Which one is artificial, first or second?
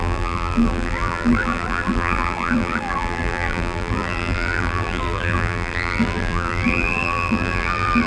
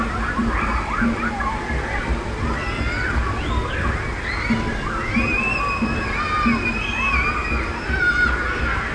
first